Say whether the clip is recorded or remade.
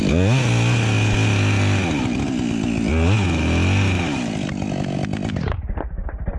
recorded